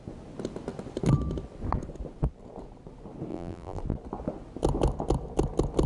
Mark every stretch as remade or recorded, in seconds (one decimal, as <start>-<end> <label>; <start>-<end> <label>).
0.0-3.3 recorded; 3.3-3.8 remade; 3.8-5.9 recorded